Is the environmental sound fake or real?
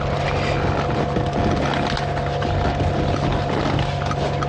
real